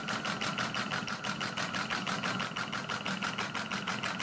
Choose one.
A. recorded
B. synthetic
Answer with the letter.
A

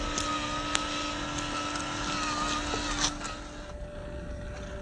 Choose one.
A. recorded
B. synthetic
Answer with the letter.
A